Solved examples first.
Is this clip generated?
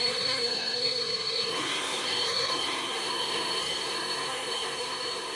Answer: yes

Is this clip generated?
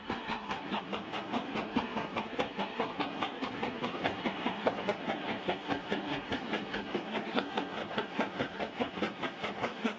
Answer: yes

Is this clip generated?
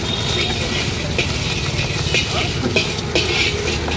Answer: no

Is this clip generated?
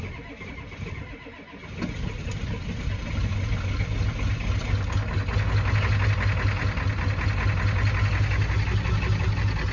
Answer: no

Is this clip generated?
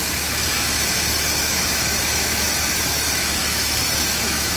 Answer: yes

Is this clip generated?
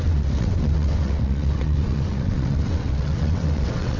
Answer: yes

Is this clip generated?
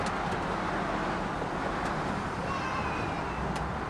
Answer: no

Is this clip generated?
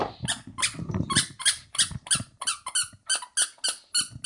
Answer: no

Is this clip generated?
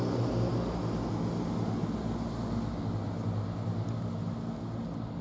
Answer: no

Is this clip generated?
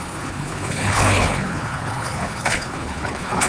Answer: yes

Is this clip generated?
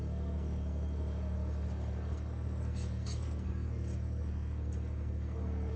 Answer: yes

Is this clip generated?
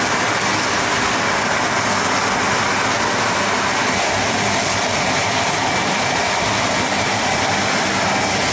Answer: no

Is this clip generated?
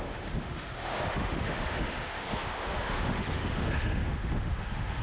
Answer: yes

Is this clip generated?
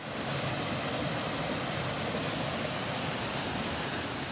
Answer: no